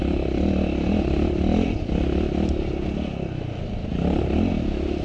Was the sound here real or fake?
real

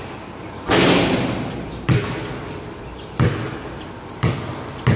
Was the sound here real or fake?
real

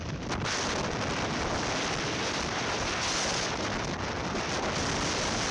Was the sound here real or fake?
real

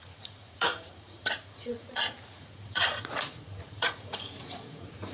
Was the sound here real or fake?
fake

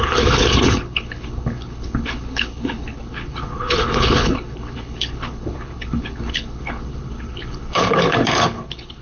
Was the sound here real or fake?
fake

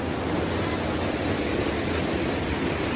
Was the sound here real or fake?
real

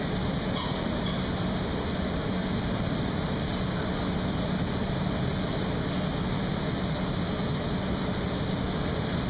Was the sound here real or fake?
real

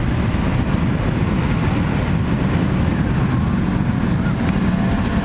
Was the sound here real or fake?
real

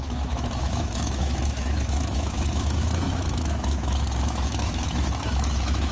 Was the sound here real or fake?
fake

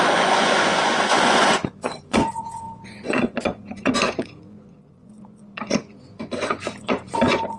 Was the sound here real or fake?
fake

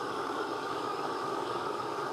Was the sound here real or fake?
fake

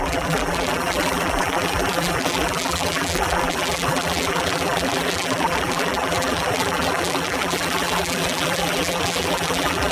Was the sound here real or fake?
fake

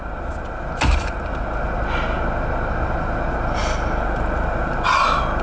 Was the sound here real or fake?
real